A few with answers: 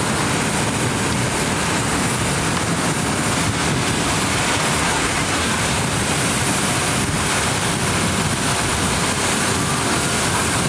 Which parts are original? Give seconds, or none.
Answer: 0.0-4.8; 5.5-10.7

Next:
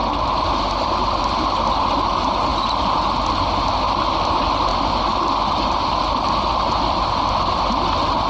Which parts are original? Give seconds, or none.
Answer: 0.0-8.3

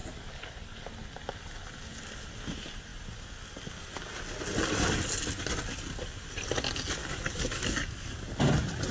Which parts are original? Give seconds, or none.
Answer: 0.9-7.0; 8.3-8.9